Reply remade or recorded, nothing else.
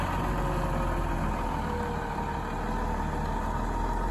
recorded